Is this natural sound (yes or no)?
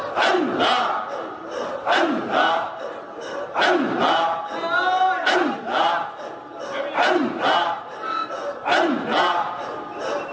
yes